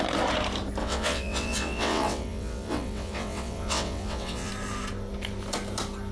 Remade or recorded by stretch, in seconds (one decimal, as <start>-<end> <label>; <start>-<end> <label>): 0.0-0.8 recorded; 0.8-4.5 remade; 4.5-6.1 recorded